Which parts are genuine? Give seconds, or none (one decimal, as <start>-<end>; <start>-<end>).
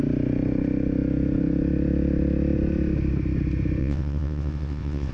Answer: 0.0-3.8